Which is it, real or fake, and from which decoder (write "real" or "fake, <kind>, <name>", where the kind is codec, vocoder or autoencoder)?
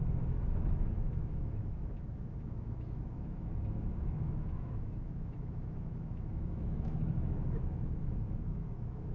fake, autoencoder, DAC-VAE